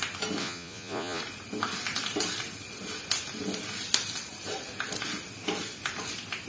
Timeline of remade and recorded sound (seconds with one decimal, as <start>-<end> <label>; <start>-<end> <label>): 0.0-0.4 recorded; 0.4-1.2 remade; 1.2-6.5 recorded